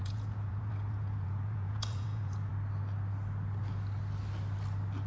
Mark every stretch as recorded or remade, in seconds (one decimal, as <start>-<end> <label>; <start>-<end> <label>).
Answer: 0.0-2.5 remade; 2.5-5.1 recorded